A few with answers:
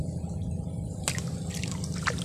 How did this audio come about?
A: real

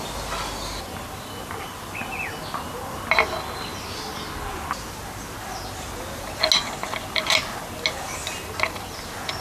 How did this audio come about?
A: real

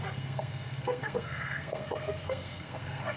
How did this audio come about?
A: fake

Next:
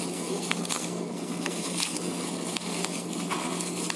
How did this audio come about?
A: fake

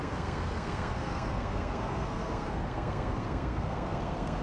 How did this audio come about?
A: fake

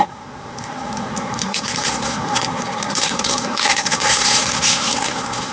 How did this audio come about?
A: fake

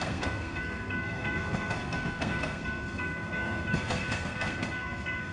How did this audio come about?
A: fake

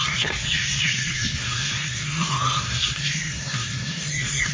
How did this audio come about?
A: fake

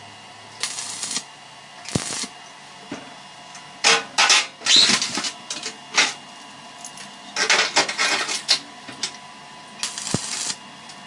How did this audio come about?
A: real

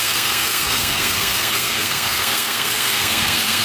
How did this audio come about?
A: fake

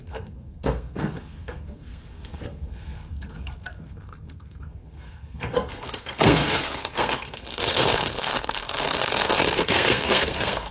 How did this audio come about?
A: fake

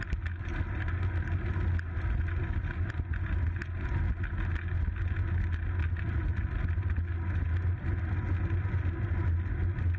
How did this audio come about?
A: real